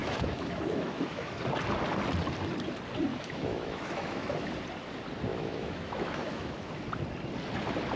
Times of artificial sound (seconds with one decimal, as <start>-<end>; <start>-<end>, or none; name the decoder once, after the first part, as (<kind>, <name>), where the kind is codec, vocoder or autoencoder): 0.0-1.4 (autoencoder, DAC-VAE); 3.1-4.5; 5.3-6.7